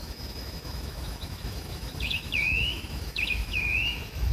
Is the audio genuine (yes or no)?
no